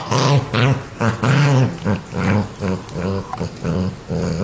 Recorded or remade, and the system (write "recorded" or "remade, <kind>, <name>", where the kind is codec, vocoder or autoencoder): recorded